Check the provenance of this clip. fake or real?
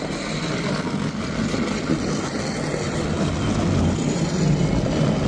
real